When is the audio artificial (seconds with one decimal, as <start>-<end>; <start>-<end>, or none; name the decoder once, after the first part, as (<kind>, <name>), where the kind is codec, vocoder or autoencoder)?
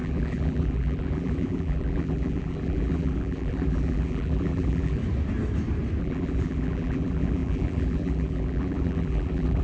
0.0-5.0 (vocoder, BigVGAN v2); 6.0-9.6